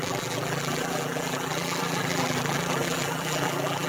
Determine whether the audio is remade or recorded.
remade